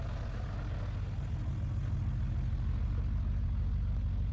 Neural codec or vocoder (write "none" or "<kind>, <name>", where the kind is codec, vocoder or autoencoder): none